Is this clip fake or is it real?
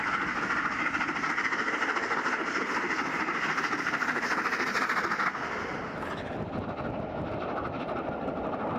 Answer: real